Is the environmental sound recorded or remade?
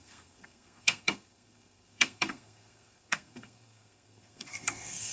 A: remade